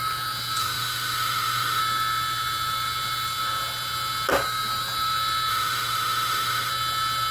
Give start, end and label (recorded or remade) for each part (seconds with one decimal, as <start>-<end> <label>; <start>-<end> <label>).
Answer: 0.0-0.6 recorded; 0.6-1.8 remade; 1.8-5.5 recorded; 5.5-6.7 remade; 6.7-7.3 recorded